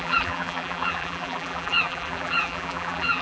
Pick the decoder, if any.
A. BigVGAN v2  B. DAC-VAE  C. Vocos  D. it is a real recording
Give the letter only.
A